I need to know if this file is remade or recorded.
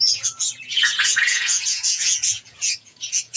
remade